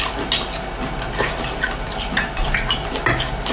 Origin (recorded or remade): recorded